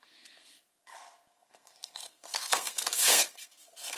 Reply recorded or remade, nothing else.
remade